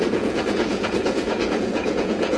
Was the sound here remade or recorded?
remade